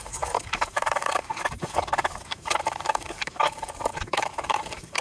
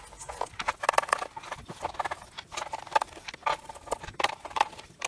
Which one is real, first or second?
second